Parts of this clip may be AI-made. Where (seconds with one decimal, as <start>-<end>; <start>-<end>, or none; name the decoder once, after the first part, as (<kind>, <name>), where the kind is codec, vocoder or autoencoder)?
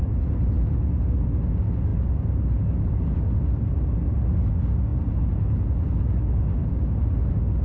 none